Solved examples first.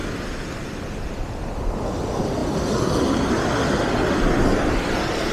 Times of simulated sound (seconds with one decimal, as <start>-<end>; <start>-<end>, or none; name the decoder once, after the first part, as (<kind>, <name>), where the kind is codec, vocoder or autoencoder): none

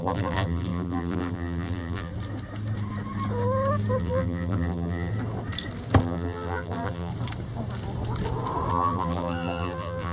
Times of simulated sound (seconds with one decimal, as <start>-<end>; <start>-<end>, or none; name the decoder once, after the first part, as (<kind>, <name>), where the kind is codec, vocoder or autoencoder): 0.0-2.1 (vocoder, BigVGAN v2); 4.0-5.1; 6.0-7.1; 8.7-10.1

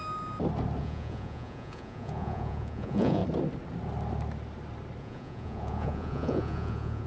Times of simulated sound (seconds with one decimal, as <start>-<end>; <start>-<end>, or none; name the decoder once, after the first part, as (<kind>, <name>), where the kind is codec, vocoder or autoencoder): 0.8-3.2 (vocoder, Vocos); 5.0-7.1

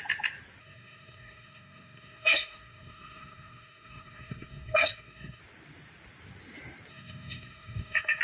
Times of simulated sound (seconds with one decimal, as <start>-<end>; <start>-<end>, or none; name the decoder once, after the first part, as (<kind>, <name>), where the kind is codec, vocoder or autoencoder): 0.6-5.4 (codec, SNAC); 6.9-8.2